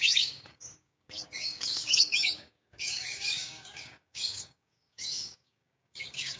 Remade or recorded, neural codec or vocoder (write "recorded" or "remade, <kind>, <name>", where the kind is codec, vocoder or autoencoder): remade, codec, DAC